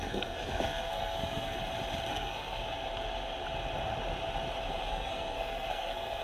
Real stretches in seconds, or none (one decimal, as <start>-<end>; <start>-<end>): 1.6-2.1; 2.6-4.9